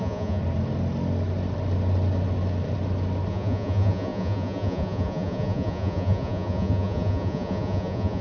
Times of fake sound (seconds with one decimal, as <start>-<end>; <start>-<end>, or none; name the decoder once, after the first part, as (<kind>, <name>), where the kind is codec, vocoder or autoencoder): 0.0-0.4 (vocoder, Vocos); 3.3-8.2